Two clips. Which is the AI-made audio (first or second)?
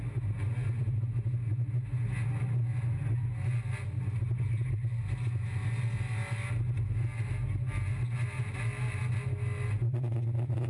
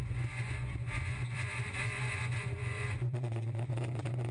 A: second